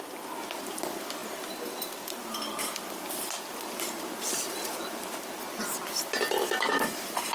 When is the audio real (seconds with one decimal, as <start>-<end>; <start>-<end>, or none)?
0.0-7.3